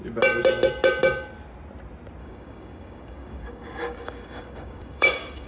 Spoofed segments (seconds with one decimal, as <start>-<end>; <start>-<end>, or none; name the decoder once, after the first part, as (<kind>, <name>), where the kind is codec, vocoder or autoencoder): 2.2-5.5 (codec, DAC)